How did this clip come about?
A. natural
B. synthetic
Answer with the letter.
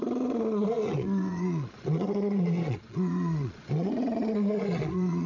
B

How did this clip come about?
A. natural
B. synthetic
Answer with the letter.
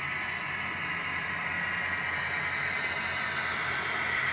A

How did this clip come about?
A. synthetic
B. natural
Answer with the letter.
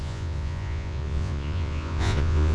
A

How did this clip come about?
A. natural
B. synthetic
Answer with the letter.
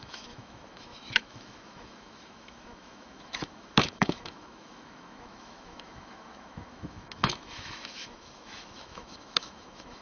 B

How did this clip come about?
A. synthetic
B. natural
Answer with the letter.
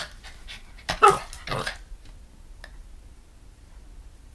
B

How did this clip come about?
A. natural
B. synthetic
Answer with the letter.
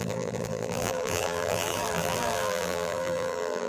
B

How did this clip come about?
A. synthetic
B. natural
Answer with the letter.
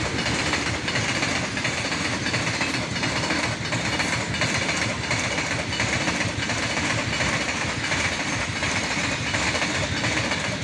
B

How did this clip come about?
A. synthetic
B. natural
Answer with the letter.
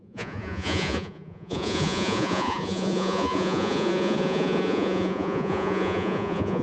A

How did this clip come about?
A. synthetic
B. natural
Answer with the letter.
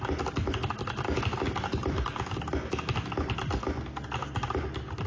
B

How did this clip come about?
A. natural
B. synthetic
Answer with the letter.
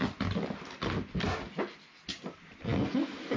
A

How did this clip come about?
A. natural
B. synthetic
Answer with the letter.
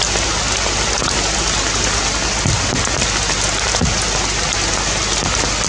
A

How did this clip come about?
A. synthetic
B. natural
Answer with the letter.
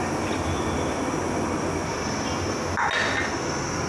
B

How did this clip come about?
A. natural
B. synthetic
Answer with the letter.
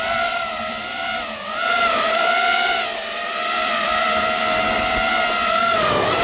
B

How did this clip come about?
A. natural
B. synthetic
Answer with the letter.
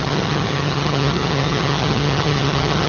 B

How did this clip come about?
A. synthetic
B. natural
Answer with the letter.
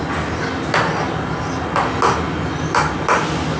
B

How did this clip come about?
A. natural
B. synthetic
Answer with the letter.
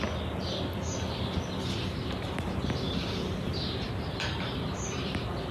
A